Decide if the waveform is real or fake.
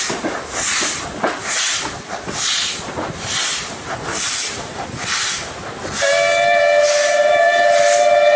real